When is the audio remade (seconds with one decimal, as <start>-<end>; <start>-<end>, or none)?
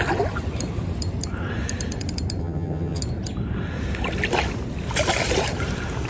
2.4-3.0